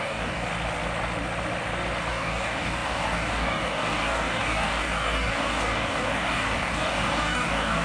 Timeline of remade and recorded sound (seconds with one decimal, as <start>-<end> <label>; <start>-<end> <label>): 0.0-0.5 remade; 0.5-2.1 recorded; 2.1-7.8 remade

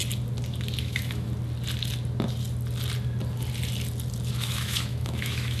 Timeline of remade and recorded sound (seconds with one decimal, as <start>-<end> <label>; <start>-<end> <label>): 0.0-0.8 recorded; 0.8-1.3 remade; 1.3-4.3 recorded; 4.3-5.6 remade

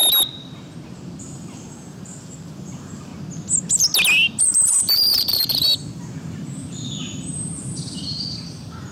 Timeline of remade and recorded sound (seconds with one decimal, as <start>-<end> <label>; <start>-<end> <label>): 0.0-1.2 recorded; 1.2-3.1 remade; 3.1-4.4 recorded; 4.4-8.9 remade

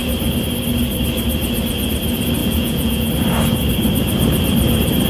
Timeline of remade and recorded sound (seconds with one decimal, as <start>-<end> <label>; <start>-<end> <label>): 0.0-2.4 recorded; 2.4-3.1 remade; 3.1-5.1 recorded